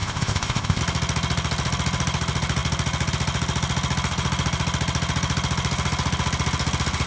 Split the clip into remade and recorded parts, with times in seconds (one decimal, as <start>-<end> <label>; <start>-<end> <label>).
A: 0.0-0.8 remade; 0.8-7.1 recorded